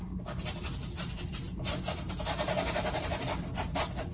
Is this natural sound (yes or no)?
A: yes